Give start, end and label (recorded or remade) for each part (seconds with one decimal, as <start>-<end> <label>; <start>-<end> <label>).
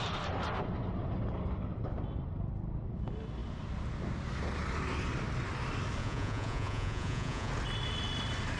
0.0-6.0 recorded; 6.0-7.5 remade; 7.5-8.6 recorded